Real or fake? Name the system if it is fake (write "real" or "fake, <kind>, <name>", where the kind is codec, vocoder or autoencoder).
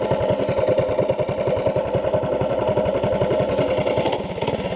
real